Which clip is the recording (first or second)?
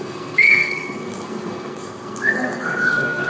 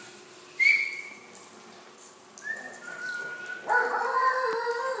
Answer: second